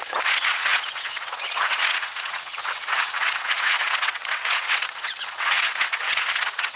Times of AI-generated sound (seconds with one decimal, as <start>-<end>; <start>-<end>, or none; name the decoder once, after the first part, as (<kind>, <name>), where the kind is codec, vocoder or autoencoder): 0.0-6.8 (vocoder, WaveNeXt)